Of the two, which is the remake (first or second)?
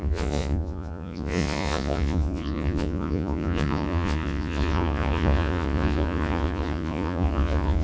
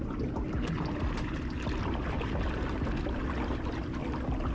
first